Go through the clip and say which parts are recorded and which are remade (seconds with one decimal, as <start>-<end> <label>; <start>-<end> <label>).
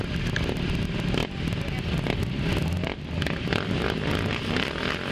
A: 0.0-5.1 recorded